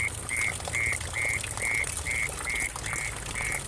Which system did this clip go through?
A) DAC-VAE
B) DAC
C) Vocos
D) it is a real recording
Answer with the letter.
D